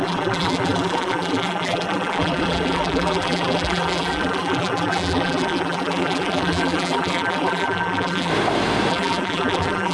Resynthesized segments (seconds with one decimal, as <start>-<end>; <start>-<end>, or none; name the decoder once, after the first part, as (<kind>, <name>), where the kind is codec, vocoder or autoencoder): 0.0-8.3 (vocoder, BigVGAN v2); 8.9-9.9